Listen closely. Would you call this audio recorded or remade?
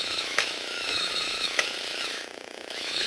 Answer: remade